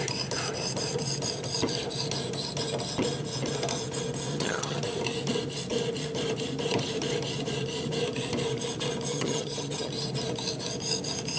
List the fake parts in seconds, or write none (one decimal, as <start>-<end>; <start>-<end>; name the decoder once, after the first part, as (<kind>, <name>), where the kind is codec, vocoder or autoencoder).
4.3-4.8 (vocoder, HiFi-GAN); 9.1-9.9